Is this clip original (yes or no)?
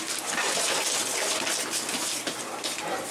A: yes